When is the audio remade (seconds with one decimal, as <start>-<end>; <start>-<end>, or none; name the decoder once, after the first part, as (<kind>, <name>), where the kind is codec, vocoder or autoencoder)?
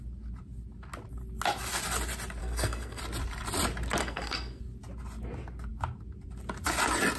2.4-3.0 (codec, SNAC); 4.0-4.6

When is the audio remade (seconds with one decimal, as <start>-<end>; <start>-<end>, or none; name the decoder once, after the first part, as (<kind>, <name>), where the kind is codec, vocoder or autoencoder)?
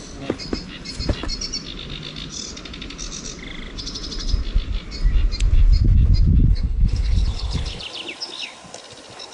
6.5-7.8 (codec, HILCodec)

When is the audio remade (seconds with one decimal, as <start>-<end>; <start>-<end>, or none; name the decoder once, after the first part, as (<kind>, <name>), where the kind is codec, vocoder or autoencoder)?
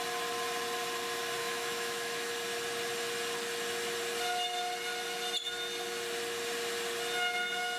1.4-2.3 (autoencoder, DAC-VAE)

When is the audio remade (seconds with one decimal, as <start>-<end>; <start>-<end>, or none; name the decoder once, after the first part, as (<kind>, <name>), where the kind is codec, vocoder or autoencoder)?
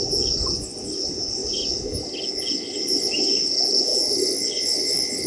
none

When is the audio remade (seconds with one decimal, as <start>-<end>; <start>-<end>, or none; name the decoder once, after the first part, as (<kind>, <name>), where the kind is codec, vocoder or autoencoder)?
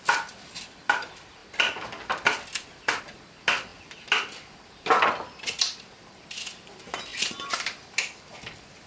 none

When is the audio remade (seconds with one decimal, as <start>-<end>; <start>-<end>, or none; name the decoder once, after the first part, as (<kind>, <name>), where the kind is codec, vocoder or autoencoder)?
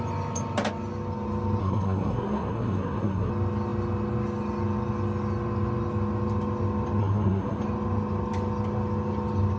1.6-3.3 (codec, SNAC); 7.0-7.6